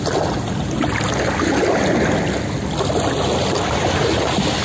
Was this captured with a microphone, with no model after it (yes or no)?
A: yes